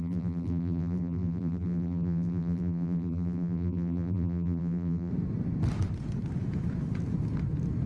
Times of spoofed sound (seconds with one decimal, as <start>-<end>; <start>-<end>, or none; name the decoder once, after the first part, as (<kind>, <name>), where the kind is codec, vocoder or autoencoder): 0.0-5.1 (vocoder, BigVGAN v2)